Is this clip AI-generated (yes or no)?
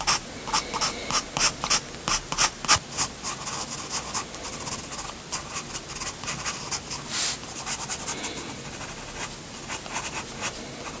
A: no